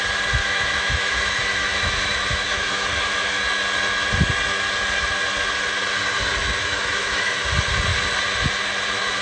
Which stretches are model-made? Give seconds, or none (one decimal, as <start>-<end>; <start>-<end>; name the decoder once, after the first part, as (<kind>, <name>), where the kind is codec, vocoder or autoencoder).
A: 0.4-3.4 (autoencoder, DAC-VAE); 6.6-7.3